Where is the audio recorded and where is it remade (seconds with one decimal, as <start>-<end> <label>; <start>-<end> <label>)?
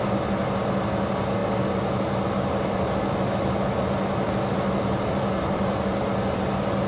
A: 0.0-6.9 recorded